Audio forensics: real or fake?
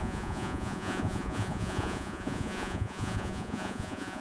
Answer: fake